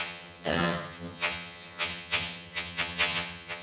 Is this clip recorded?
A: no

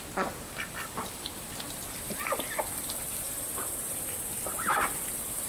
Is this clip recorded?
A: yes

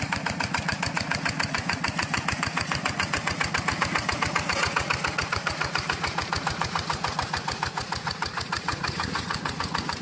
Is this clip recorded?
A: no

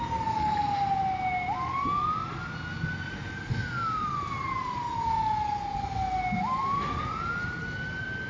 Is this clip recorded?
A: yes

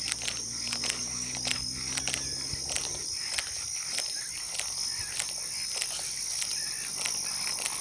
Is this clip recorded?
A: yes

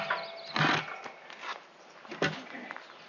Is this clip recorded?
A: yes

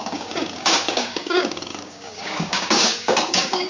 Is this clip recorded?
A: no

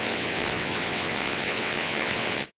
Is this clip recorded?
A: no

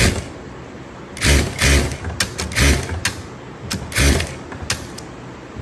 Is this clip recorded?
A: yes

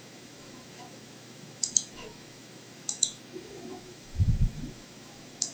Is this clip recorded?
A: no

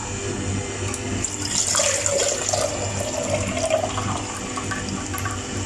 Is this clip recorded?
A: yes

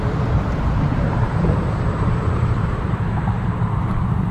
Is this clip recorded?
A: no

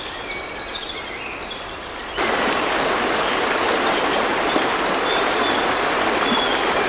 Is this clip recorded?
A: yes